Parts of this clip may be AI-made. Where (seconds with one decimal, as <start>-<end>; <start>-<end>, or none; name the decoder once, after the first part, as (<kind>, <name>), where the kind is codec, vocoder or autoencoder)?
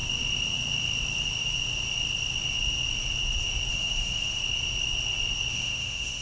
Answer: 3.7-4.4 (autoencoder, DAC-VAE); 5.5-6.2